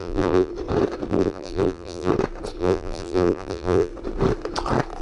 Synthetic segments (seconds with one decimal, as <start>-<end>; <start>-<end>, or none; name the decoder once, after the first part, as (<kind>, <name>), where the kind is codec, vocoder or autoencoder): 0.0-0.5 (vocoder, BigVGAN v2); 1.1-2.1; 2.6-3.9